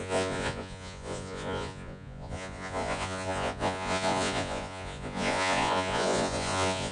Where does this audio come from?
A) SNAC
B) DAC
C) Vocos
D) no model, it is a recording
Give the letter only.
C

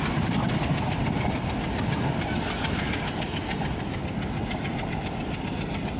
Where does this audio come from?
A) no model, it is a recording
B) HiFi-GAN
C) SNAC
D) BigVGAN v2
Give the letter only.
A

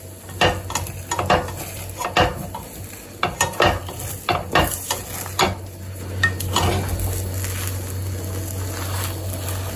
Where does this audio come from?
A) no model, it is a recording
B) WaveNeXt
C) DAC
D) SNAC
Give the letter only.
A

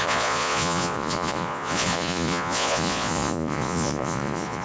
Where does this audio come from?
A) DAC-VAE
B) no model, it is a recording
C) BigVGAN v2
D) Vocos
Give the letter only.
D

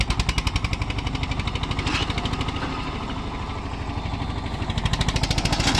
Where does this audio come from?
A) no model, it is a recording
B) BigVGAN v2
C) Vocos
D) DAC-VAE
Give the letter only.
A